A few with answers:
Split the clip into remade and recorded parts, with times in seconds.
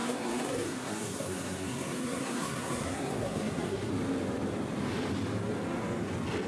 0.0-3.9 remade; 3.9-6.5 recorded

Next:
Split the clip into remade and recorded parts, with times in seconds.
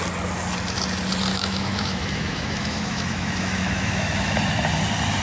0.0-1.3 recorded; 1.3-4.4 remade; 4.4-5.2 recorded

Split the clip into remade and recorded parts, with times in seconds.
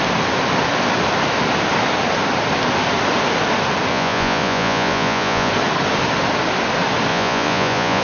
0.0-3.9 recorded; 3.9-5.5 remade; 5.5-7.1 recorded; 7.1-8.0 remade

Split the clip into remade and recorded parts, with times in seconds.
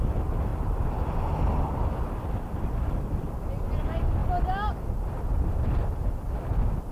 0.0-6.9 recorded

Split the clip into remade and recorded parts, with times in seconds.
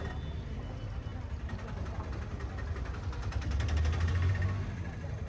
0.0-1.1 remade; 1.1-4.3 recorded; 4.3-5.3 remade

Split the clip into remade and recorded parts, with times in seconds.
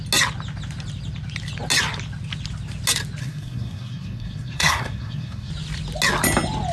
0.0-3.2 recorded; 3.2-5.5 remade; 5.5-6.7 recorded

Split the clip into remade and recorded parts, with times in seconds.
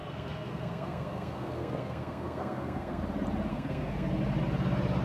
0.0-3.0 remade; 3.0-3.5 recorded; 3.5-4.2 remade; 4.2-5.0 recorded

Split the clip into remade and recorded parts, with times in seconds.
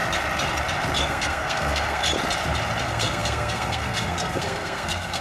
0.0-1.0 recorded; 1.0-2.0 remade; 2.0-2.8 recorded; 2.8-5.2 remade